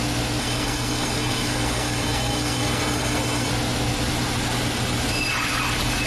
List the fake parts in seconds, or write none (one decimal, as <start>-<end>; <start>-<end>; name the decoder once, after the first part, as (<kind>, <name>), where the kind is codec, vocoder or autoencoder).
0.4-3.5 (codec, SNAC)